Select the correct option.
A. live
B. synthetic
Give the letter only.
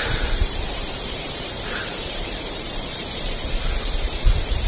B